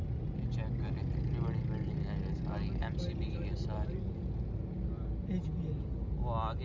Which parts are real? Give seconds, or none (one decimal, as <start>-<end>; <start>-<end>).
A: 0.0-2.8; 4.1-6.6